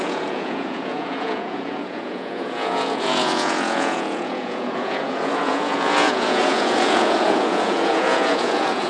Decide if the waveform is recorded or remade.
remade